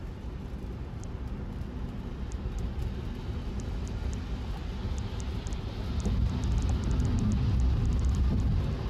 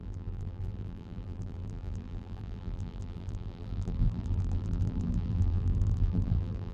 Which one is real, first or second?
first